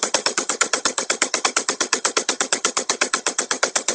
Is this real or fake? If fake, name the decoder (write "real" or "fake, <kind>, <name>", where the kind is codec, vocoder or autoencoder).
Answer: fake, vocoder, HiFi-GAN